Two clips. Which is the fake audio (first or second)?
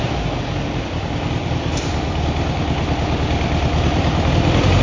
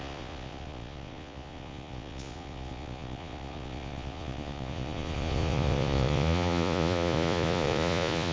second